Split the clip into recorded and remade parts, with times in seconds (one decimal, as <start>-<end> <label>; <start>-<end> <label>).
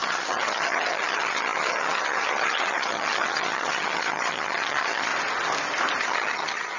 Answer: 0.0-5.1 remade; 5.1-6.0 recorded; 6.0-6.8 remade